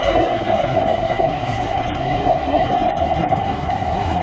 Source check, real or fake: fake